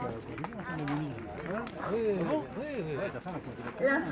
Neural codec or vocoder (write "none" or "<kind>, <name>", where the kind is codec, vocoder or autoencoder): none